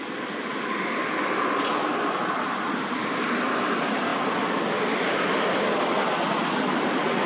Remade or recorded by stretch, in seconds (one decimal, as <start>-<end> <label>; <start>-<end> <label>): 0.0-7.3 recorded